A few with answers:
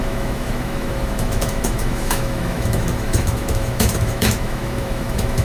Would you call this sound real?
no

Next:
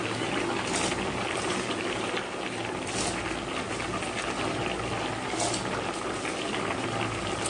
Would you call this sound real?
yes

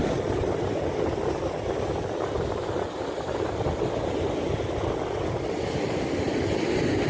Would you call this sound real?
yes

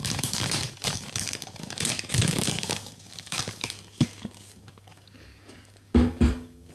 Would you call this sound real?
no